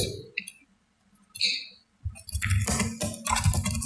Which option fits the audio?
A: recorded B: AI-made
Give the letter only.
A